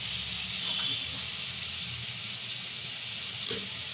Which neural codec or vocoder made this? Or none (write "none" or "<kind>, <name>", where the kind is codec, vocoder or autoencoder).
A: none